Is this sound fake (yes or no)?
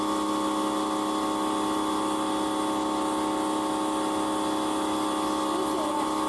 no